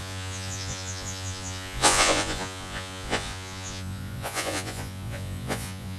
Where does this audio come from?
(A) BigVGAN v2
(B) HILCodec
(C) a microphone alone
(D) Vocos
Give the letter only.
D